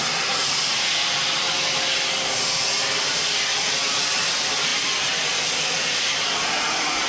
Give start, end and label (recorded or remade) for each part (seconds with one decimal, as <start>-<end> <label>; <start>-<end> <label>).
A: 0.0-7.1 recorded